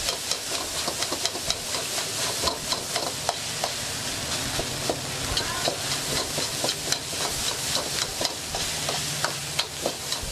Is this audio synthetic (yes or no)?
no